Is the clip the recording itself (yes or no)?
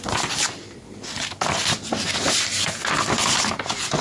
no